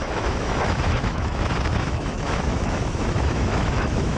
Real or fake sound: fake